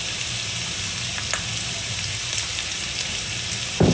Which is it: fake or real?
real